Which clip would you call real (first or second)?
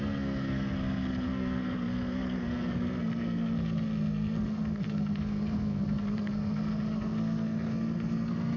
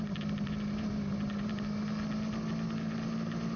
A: second